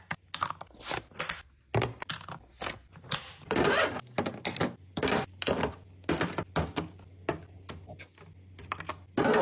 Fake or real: real